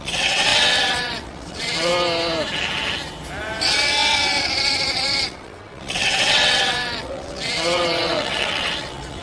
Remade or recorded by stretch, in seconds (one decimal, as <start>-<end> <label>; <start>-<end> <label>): 0.0-1.9 remade; 1.9-3.6 recorded; 3.6-9.2 remade